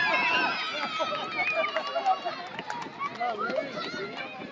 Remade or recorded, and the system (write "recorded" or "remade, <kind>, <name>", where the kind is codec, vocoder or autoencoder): recorded